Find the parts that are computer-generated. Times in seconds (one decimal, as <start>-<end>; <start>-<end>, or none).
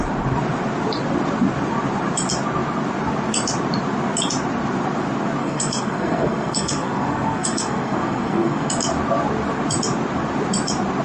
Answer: 5.4-8.7